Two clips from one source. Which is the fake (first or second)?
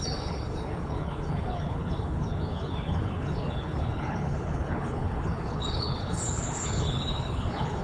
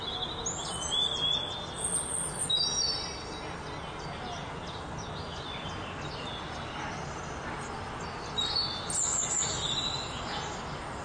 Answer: first